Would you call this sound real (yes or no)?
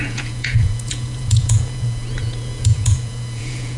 no